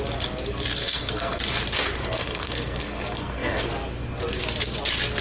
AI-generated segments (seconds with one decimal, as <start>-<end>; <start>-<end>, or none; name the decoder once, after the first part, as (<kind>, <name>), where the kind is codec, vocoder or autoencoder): 0.8-1.4 (codec, SNAC); 2.0-3.7